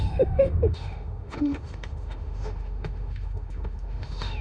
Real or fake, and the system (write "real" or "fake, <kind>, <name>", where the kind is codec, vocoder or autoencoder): fake, autoencoder, DAC-VAE